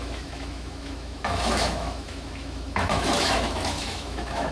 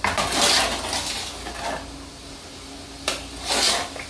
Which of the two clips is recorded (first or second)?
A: second